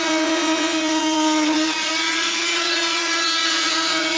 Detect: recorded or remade remade